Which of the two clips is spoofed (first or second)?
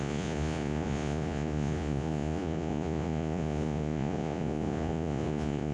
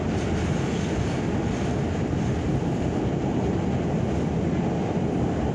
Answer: first